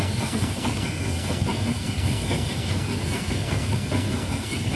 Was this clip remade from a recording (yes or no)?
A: yes